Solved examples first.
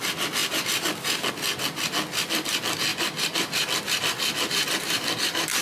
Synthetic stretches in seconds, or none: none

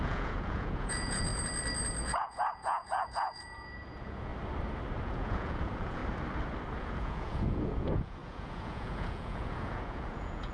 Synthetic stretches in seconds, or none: 0.0-1.3; 2.0-4.3; 5.0-6.0; 6.8-10.5

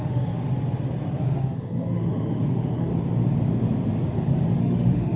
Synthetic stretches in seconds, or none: 0.0-0.5; 1.2-2.9; 4.6-5.2

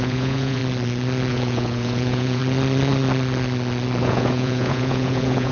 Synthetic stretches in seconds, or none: 0.0-0.6; 1.3-2.4; 4.0-5.5

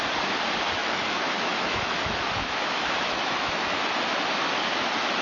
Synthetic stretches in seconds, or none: 0.8-3.9

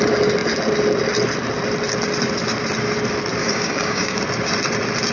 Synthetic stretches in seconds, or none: 3.4-4.2

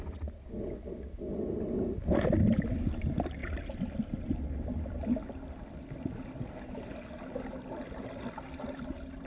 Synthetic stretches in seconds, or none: none

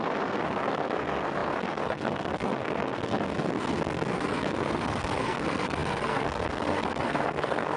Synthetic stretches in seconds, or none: 0.0-7.8